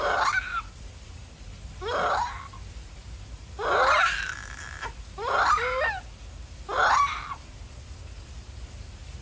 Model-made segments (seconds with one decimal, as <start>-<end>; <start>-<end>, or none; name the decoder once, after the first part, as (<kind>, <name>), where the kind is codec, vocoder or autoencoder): none